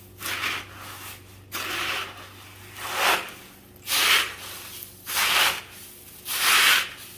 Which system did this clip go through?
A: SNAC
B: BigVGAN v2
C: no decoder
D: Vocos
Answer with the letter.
C